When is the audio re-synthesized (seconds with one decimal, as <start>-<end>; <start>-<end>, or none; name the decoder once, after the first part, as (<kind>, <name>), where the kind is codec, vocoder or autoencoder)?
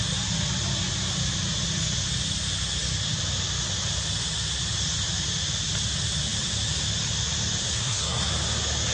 7.6-8.3 (codec, SNAC)